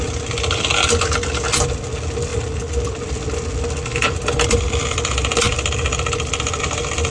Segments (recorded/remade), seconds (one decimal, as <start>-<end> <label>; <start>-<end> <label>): 0.0-7.1 recorded